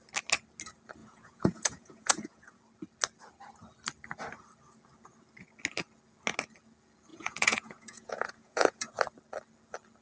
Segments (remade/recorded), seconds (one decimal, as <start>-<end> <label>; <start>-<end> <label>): 0.0-1.0 recorded; 1.0-2.6 remade; 2.6-7.1 recorded; 7.1-8.9 remade; 8.9-10.0 recorded